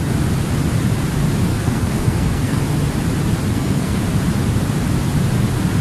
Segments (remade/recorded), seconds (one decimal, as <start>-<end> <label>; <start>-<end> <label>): 0.0-1.5 recorded; 1.5-2.6 remade; 2.6-3.5 recorded; 3.5-4.0 remade; 4.0-5.8 recorded